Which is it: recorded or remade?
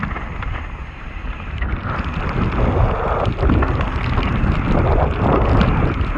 recorded